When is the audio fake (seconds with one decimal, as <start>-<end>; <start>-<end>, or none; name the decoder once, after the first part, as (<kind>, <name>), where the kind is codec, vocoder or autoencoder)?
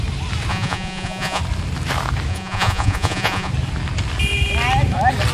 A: 0.5-1.4 (vocoder, Vocos); 2.3-3.5